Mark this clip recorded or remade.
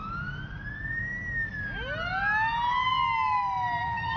recorded